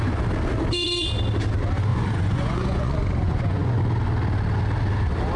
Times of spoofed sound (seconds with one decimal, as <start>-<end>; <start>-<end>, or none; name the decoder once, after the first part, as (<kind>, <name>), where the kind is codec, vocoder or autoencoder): 1.9-3.8 (vocoder, Vocos)